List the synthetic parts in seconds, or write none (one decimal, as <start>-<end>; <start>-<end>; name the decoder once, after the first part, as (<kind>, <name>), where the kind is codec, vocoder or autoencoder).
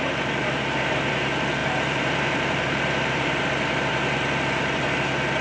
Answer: 1.6-3.4 (vocoder, BigVGAN v2)